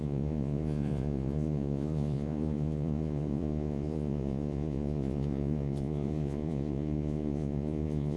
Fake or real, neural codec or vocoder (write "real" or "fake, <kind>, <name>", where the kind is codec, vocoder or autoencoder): fake, vocoder, Vocos